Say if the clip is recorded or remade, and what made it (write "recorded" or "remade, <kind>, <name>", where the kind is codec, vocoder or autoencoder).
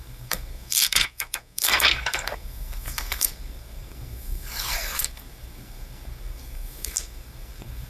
remade, codec, SNAC